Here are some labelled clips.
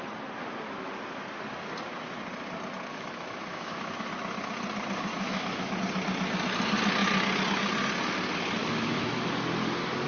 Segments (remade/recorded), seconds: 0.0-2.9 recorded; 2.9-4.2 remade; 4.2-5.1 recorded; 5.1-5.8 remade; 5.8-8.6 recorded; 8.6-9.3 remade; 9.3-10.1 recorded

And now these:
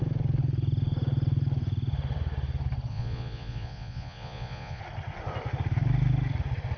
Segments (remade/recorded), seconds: 0.0-2.9 recorded; 2.9-4.8 remade; 4.8-6.8 recorded